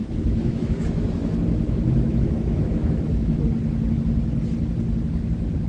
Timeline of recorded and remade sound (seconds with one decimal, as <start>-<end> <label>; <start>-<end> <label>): 0.0-3.4 remade; 3.4-5.7 recorded